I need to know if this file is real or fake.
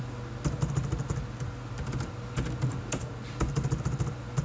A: real